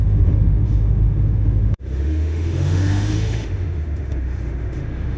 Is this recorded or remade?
remade